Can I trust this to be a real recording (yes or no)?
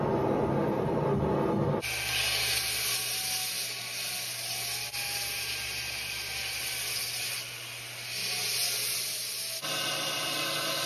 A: yes